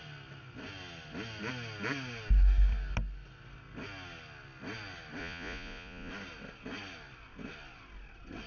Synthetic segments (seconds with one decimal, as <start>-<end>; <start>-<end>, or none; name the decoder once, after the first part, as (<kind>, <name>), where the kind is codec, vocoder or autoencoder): 5.2-6.1 (vocoder, Vocos)